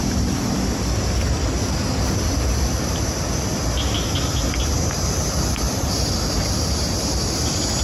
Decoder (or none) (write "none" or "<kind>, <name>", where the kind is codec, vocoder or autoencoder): none